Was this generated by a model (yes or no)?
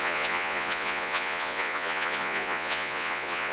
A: yes